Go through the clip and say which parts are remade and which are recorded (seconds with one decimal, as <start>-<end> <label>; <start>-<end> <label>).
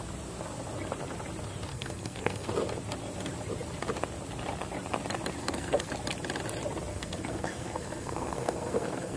0.0-1.7 recorded; 1.7-2.5 remade; 2.5-5.4 recorded; 5.4-5.9 remade; 5.9-6.9 recorded; 6.9-9.2 remade